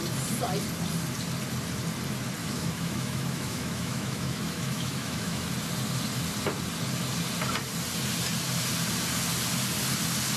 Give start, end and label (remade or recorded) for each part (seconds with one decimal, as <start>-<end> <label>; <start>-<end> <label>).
0.0-2.4 recorded; 2.4-5.5 remade; 5.5-10.4 recorded